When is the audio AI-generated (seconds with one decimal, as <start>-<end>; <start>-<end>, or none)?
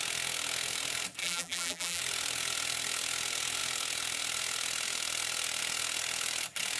1.2-2.0